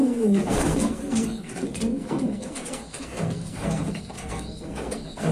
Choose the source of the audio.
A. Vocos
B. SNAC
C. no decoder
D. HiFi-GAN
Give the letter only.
B